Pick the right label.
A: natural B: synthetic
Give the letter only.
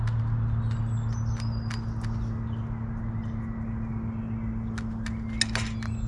A